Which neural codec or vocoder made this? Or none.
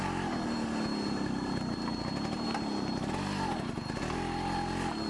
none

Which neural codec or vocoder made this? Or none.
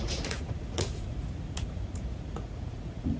vocoder, Vocos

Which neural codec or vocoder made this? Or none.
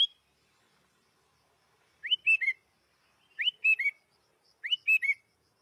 none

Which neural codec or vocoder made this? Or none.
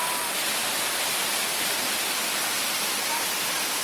none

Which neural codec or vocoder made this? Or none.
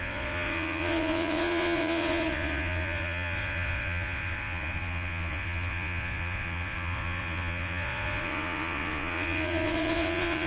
vocoder, Vocos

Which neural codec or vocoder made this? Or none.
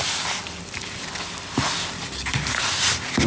none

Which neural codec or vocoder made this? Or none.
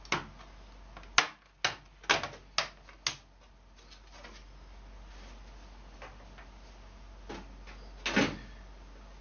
none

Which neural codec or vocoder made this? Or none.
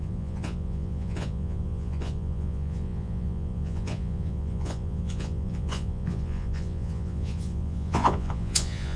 vocoder, Vocos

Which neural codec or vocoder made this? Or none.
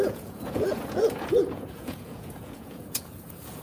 vocoder, Vocos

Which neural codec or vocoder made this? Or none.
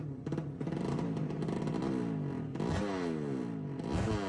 none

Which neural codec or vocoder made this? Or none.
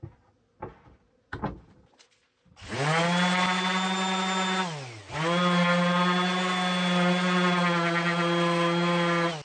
none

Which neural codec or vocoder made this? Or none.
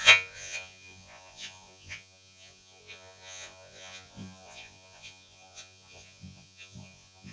vocoder, Vocos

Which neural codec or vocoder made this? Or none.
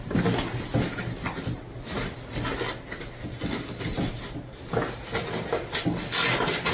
none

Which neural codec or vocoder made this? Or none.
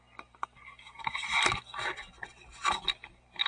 none